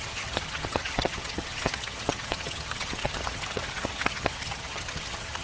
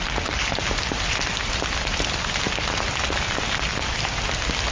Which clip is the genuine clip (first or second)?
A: second